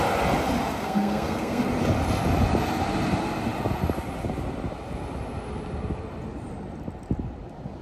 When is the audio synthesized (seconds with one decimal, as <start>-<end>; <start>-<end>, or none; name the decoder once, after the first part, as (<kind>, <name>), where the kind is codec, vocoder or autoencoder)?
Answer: 0.7-1.6 (codec, SNAC)